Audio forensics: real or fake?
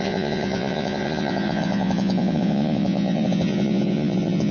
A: fake